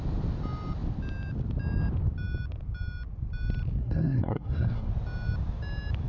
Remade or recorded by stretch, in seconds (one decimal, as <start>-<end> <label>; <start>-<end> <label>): 0.0-3.8 recorded; 3.8-4.9 remade; 4.9-6.1 recorded